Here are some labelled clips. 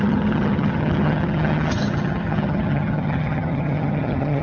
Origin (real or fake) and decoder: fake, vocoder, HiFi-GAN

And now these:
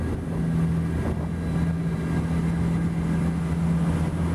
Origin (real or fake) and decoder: real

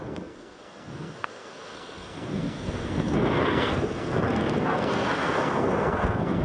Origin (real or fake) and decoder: fake, codec, SNAC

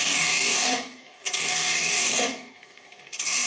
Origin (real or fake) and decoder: fake, codec, DAC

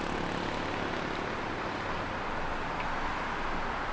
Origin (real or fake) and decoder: real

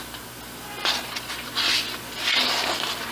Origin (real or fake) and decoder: real